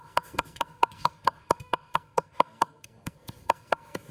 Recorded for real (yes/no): no